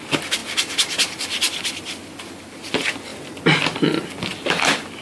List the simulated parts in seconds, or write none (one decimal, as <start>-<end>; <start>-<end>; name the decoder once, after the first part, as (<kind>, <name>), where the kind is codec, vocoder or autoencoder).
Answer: 0.4-2.6 (vocoder, BigVGAN v2)

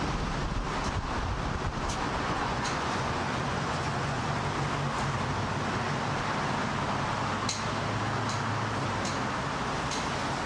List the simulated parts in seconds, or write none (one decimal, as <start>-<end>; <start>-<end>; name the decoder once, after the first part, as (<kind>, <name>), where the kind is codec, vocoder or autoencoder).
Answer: 2.2-4.4 (vocoder, Vocos)

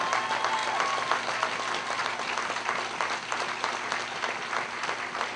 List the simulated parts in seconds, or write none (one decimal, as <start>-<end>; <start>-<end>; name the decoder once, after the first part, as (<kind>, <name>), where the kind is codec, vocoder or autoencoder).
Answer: 0.6-3.8 (vocoder, BigVGAN v2)

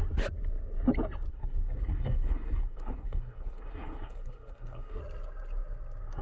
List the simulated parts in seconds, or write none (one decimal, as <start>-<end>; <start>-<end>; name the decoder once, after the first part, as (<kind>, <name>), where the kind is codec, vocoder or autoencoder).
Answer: 1.3-5.0 (codec, SNAC)

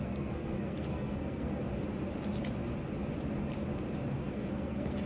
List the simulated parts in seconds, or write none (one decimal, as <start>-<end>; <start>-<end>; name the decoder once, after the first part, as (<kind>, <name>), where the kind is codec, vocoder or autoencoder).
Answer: 0.0-1.6 (codec, SNAC); 4.3-5.1

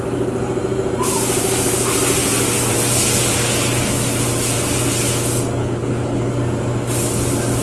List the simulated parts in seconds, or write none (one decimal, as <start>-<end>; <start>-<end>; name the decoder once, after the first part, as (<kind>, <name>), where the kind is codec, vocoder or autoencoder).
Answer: 5.6-6.3 (codec, HILCodec)

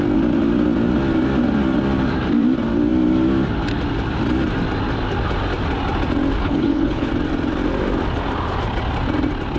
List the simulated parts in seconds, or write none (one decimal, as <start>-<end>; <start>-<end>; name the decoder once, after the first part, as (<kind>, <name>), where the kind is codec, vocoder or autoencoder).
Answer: 6.4-7.1 (codec, HILCodec)

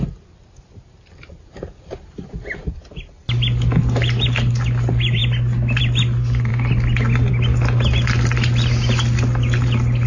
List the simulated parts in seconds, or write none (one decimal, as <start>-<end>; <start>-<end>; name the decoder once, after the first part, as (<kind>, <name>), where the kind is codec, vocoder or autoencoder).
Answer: none